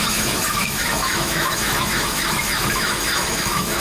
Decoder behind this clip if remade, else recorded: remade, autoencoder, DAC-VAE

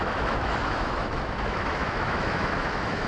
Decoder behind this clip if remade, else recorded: remade, autoencoder, DAC-VAE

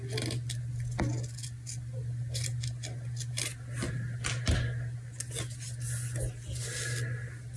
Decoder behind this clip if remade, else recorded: recorded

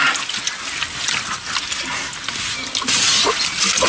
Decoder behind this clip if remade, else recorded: recorded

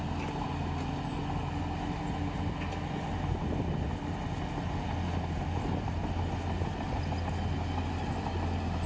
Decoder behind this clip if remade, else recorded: recorded